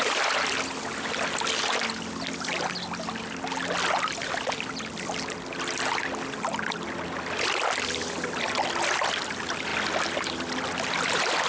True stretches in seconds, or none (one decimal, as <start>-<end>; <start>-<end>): 0.0-11.5